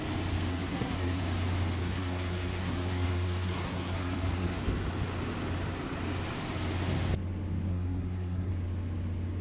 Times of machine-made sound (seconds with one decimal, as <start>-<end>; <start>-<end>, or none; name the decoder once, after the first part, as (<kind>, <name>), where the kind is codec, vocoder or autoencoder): 0.5-1.2 (codec, SNAC); 1.8-4.6; 7.7-8.5